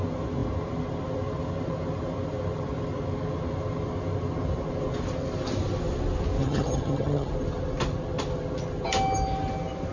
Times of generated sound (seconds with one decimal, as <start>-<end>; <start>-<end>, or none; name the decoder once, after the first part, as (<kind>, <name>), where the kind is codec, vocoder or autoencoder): 6.4-7.3 (vocoder, HiFi-GAN)